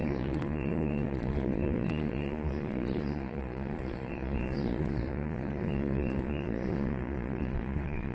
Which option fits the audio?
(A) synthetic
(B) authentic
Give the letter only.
A